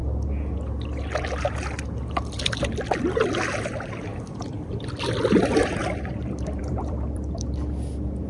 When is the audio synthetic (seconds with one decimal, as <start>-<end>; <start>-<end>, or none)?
4.1-7.5